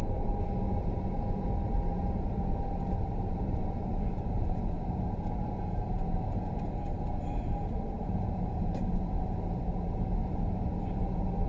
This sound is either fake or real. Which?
fake